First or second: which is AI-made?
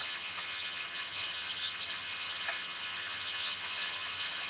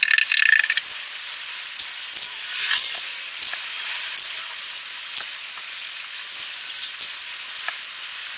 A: first